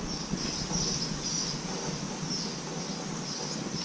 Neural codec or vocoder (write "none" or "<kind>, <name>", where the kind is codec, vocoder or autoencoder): none